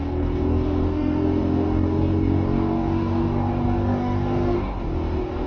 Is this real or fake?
fake